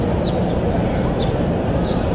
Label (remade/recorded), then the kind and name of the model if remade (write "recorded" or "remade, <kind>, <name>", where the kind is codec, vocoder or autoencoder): recorded